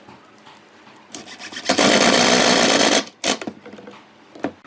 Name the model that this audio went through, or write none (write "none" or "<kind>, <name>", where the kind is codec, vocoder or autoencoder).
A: none